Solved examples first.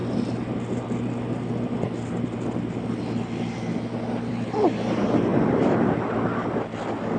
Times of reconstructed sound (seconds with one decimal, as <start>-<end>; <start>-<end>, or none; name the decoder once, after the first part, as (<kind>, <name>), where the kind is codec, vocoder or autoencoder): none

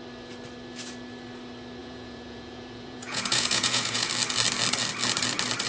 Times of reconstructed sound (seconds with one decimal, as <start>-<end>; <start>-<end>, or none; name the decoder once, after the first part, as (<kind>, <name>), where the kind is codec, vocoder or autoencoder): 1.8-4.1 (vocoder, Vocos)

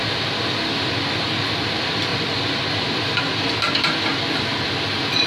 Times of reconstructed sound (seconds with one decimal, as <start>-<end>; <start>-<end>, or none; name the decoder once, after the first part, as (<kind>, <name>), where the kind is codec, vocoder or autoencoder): none

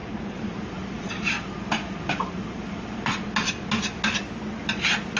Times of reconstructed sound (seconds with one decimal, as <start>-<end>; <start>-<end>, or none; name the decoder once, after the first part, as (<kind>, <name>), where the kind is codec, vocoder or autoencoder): 0.0-3.1 (vocoder, BigVGAN v2)

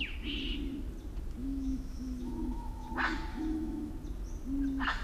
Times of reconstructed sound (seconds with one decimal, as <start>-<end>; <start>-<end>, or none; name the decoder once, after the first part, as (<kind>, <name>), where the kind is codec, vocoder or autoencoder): 1.4-2.9 (autoencoder, DAC-VAE); 3.3-3.9